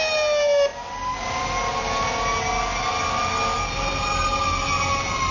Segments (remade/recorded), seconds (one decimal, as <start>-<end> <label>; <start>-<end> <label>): 0.0-5.3 recorded